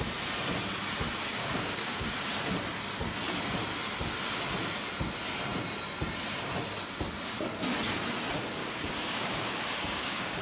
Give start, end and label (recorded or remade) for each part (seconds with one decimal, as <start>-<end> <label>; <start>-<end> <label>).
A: 0.0-1.3 recorded; 1.3-2.3 remade; 2.3-8.6 recorded; 8.6-10.4 remade